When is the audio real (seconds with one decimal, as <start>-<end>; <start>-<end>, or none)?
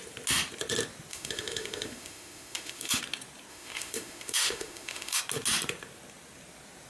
0.0-1.1; 3.0-3.5; 5.2-6.9